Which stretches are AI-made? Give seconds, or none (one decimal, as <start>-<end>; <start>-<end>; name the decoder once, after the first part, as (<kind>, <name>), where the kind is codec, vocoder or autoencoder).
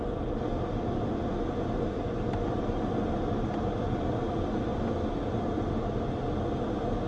none